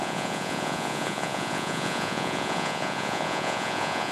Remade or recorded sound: remade